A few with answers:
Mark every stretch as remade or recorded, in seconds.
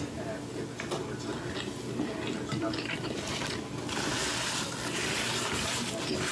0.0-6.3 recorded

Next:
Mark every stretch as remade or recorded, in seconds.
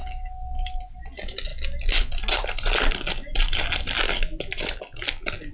0.0-0.8 remade; 0.8-5.5 recorded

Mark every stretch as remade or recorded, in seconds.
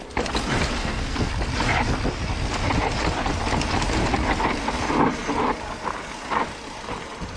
0.0-0.8 recorded; 0.8-1.3 remade; 1.3-7.4 recorded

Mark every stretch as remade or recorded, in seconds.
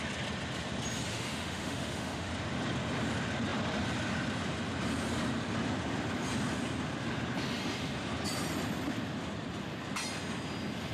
0.0-1.1 recorded; 1.1-2.3 remade; 2.3-10.9 recorded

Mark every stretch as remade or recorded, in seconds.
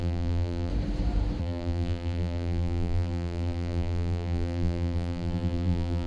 0.0-0.7 remade; 0.7-1.4 recorded; 1.4-6.1 remade